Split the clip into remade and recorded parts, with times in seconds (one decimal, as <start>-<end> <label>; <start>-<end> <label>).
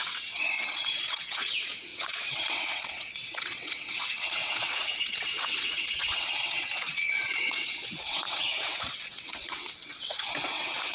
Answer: 0.0-10.9 remade